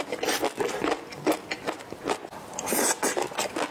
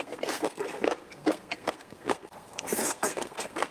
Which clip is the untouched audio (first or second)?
first